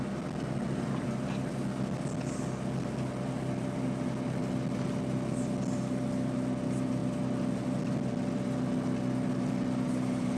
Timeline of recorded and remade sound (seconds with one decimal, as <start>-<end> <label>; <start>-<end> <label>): 0.0-10.4 recorded